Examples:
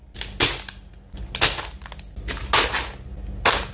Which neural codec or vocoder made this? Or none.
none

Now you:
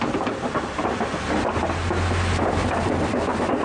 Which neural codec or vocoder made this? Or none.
none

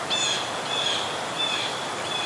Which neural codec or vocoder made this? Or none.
none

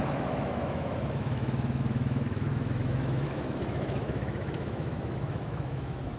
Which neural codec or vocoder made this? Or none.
autoencoder, DAC-VAE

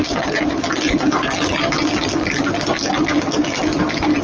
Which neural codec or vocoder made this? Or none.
none